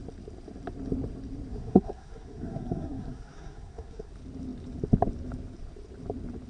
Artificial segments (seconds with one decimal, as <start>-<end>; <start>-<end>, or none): 1.5-4.1